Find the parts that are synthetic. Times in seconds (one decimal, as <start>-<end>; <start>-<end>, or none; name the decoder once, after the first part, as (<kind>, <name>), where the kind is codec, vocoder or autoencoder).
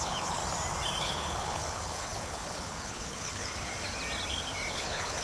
0.0-0.4 (codec, HILCodec); 1.0-3.7; 4.7-5.2